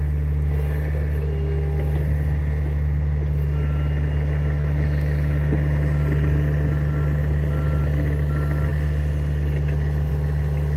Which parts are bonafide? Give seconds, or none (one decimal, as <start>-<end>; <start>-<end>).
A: 0.0-10.8